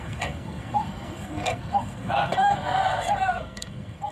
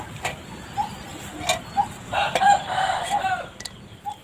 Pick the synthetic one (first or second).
first